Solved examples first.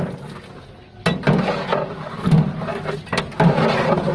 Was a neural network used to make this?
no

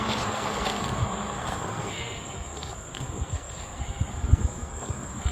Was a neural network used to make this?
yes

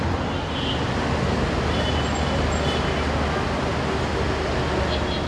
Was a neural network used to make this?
no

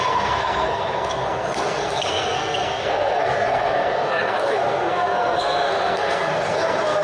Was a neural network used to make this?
yes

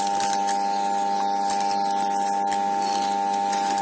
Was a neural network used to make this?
no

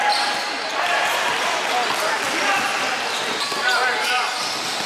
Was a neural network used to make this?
no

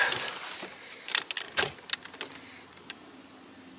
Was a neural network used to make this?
no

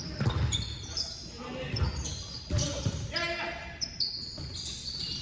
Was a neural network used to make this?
no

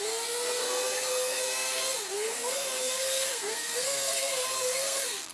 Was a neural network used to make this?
yes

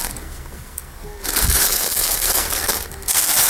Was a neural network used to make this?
yes